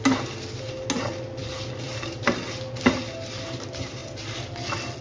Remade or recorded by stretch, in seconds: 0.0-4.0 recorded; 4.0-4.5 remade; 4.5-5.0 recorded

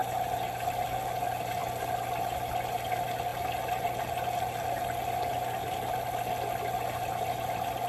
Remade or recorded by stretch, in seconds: 0.0-7.9 recorded

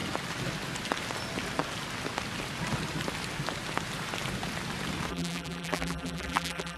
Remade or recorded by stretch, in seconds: 0.0-5.1 recorded; 5.1-6.8 remade

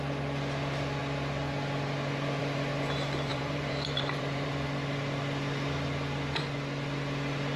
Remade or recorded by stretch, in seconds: 0.0-3.3 recorded; 3.3-4.5 remade; 4.5-7.6 recorded

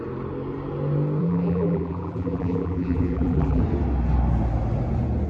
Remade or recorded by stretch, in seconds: 0.0-1.2 recorded; 1.2-3.6 remade; 3.6-5.3 recorded

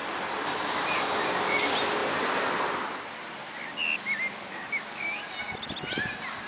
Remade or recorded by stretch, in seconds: 0.0-1.2 remade; 1.2-6.5 recorded

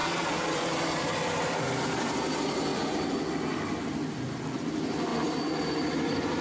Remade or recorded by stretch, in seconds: 0.0-0.5 recorded; 0.5-2.7 remade; 2.7-4.6 recorded; 4.6-6.4 remade

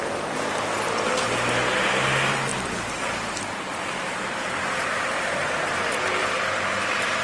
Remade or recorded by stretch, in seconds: 0.0-7.2 recorded